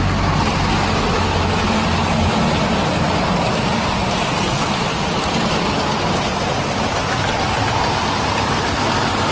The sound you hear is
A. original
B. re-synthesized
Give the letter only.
A